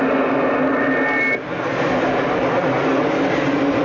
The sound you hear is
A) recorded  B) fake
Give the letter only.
A